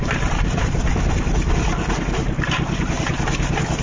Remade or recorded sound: recorded